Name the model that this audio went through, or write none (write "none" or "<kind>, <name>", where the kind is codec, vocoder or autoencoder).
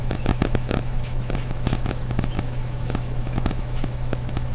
autoencoder, DAC-VAE